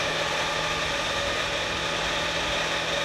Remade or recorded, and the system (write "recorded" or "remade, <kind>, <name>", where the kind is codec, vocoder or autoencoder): recorded